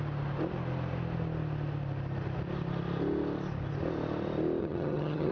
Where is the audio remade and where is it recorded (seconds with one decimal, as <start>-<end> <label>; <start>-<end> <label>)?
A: 0.0-4.6 recorded; 4.6-5.3 remade